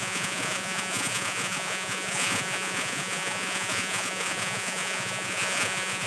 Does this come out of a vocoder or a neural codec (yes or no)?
yes